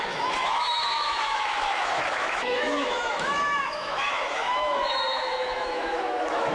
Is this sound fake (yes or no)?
yes